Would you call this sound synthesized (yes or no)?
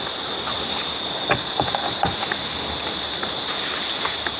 no